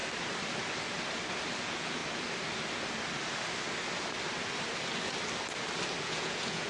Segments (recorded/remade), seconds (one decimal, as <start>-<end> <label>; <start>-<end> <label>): 0.0-1.6 recorded; 1.6-2.0 remade; 2.0-6.0 recorded; 6.0-6.7 remade